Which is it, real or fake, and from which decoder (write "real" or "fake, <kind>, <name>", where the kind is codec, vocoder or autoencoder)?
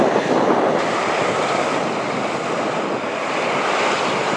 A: real